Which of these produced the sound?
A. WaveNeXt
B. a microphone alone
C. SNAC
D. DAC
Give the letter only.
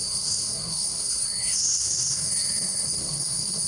C